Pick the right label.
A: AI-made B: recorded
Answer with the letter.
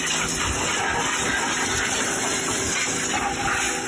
B